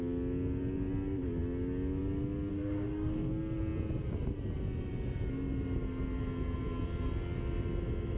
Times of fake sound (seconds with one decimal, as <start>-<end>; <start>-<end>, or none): 2.5-3.3